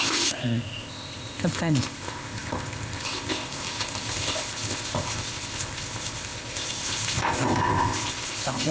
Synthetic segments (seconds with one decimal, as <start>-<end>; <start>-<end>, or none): 0.0-8.7